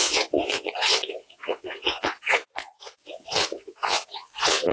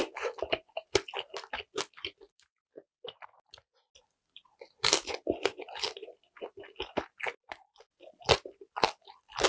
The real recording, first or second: second